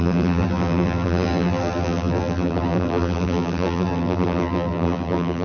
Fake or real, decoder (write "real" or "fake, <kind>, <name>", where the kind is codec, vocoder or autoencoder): fake, vocoder, BigVGAN v2